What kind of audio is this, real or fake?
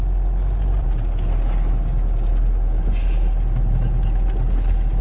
real